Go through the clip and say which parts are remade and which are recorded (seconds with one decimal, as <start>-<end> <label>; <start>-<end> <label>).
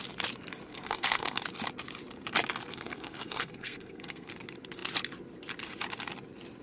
0.0-0.7 recorded; 0.7-1.4 remade; 1.4-2.7 recorded; 2.7-4.3 remade; 4.3-6.6 recorded